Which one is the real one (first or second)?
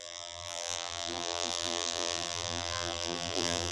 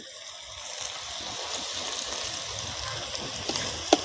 second